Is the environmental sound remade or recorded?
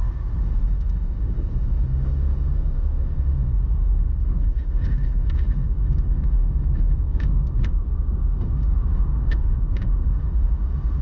remade